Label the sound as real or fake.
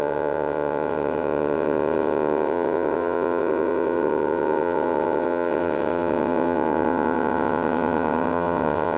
fake